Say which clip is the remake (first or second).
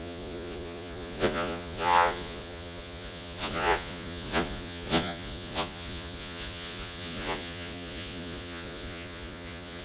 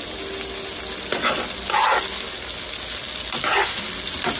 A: first